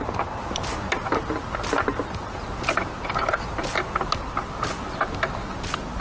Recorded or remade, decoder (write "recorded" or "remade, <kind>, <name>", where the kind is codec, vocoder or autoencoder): recorded